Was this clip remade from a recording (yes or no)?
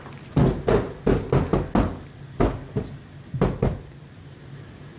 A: no